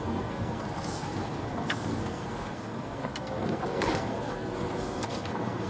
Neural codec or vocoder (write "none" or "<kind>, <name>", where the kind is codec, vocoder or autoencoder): codec, SNAC